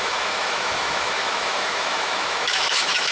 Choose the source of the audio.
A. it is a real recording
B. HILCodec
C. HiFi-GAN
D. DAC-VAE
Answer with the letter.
D